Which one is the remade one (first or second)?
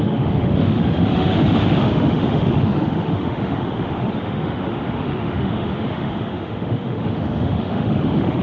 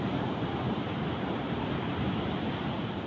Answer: first